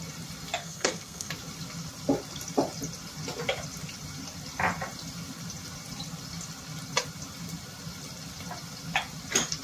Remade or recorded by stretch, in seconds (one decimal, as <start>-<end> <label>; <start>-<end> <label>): 0.0-0.6 recorded; 0.6-1.3 remade; 1.3-9.6 recorded